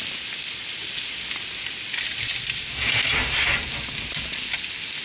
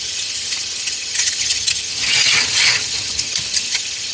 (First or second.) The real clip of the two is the first